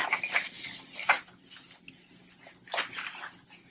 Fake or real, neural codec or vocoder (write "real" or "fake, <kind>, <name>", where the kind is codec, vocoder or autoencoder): real